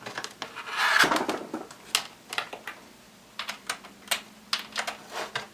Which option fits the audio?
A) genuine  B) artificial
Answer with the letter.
A